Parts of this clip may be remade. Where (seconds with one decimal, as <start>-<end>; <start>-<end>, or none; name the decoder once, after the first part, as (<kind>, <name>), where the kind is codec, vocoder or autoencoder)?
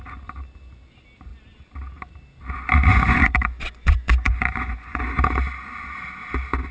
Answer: 2.9-5.0 (vocoder, Vocos)